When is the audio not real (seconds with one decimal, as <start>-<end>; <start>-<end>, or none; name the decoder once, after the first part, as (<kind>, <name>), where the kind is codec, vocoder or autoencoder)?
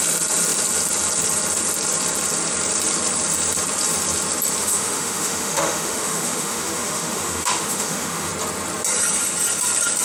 4.6-8.3 (autoencoder, DAC-VAE)